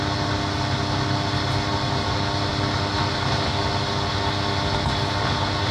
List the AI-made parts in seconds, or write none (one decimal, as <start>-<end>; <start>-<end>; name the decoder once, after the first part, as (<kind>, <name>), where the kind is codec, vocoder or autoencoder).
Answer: none